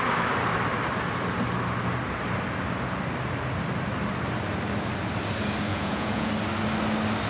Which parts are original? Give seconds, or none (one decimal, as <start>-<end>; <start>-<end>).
0.0-5.7; 6.3-7.3

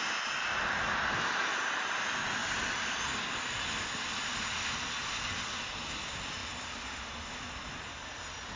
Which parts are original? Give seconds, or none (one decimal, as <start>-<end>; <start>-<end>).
0.0-8.6